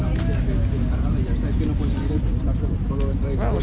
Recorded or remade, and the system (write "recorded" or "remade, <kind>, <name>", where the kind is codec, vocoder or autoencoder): recorded